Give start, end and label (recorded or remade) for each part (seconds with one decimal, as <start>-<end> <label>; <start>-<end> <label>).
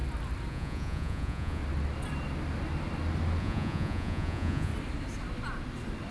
0.0-0.5 recorded; 0.5-1.6 remade; 1.6-3.4 recorded; 3.4-4.7 remade; 4.7-6.1 recorded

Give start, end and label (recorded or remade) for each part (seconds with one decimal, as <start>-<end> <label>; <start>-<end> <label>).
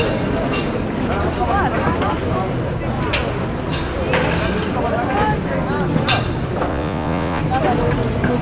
0.0-6.7 recorded; 6.7-7.4 remade; 7.4-8.4 recorded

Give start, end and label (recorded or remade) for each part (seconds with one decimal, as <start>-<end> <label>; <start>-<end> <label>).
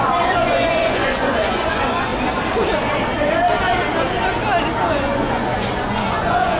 0.0-2.1 remade; 2.1-4.9 recorded; 4.9-6.6 remade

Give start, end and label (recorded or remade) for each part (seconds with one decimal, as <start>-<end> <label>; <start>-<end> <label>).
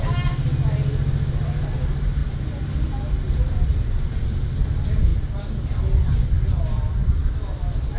0.0-8.0 recorded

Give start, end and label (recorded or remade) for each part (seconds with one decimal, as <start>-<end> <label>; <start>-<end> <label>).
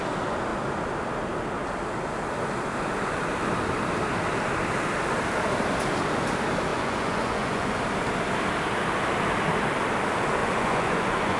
0.0-6.7 recorded; 6.7-7.8 remade; 7.8-10.4 recorded; 10.4-11.4 remade